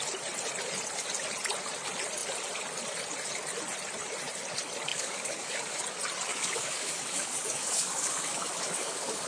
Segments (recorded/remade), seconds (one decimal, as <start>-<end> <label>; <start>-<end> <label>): 0.0-4.9 recorded; 4.9-5.8 remade; 5.8-6.3 recorded; 6.3-9.3 remade